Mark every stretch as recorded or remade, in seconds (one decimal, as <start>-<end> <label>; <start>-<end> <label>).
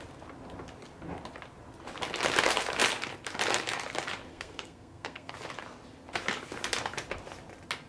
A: 0.0-4.3 recorded; 4.3-5.3 remade; 5.3-7.9 recorded